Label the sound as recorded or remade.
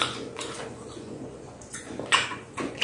remade